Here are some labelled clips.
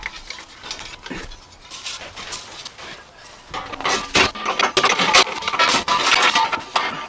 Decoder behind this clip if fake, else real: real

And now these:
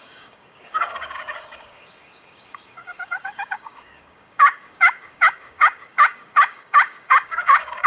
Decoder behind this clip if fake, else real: fake, codec, DAC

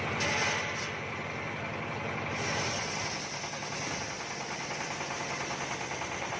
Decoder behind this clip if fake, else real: real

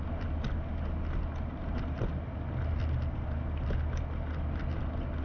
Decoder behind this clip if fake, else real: real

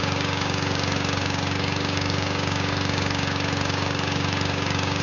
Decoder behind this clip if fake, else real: fake, codec, DAC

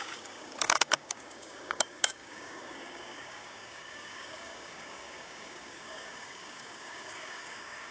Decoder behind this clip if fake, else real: fake, codec, DAC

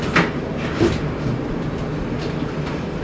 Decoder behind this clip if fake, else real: real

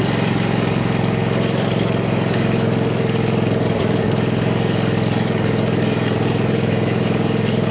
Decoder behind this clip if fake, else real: fake, codec, DAC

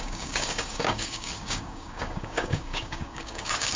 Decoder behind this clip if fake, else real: fake, codec, DAC